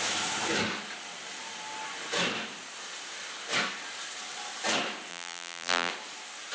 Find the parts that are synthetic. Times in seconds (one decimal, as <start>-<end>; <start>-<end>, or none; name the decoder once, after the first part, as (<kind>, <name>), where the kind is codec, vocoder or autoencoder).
5.1-5.9 (vocoder, BigVGAN v2)